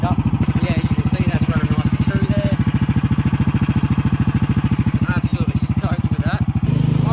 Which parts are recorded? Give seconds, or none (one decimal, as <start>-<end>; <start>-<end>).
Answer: 0.0-7.1